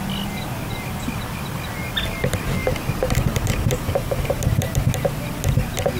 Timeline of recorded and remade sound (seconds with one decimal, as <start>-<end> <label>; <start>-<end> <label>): 0.0-2.6 recorded; 2.6-4.8 remade; 4.8-6.0 recorded